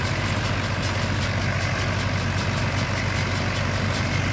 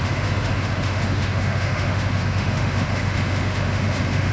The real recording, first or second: first